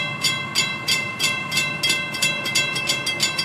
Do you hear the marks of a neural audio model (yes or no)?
no